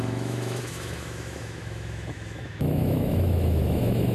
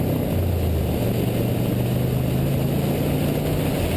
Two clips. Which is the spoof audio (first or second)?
first